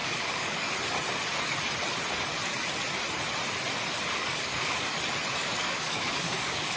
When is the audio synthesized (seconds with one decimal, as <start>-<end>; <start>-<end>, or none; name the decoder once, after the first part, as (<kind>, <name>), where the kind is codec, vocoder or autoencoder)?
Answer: 0.0-0.7 (codec, DAC); 4.1-5.0; 5.4-6.8